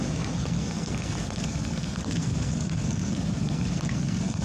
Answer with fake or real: fake